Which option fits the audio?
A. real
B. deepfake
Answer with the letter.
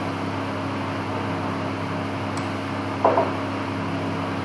A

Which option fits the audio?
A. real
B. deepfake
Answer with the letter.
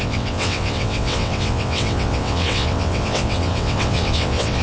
B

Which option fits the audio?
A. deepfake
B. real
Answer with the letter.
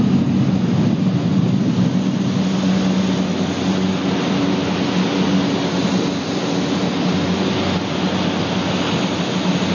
B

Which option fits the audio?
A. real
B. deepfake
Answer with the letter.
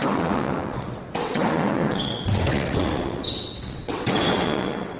B